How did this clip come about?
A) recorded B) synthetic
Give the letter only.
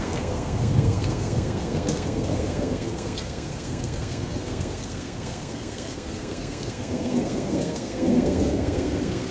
B